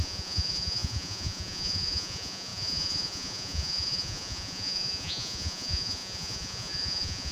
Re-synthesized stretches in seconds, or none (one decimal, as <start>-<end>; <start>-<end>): 0.0-7.3